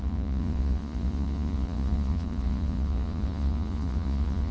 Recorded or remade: remade